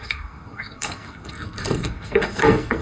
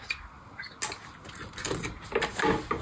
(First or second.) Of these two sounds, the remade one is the first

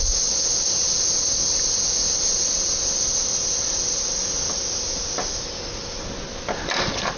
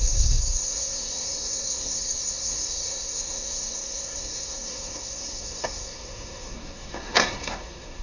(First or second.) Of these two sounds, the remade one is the second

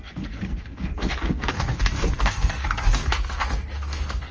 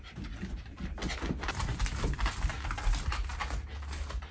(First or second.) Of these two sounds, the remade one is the first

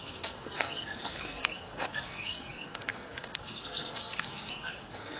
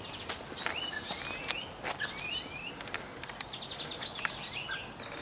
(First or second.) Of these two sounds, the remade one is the first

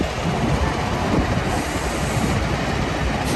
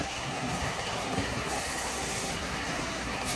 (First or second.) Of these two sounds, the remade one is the second